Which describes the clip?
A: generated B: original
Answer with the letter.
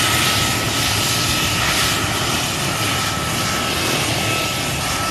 B